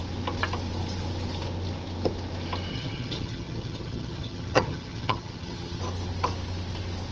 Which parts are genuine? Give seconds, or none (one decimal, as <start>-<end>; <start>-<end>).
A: 0.0-2.7; 5.8-7.1